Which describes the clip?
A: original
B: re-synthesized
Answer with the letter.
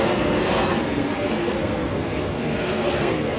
B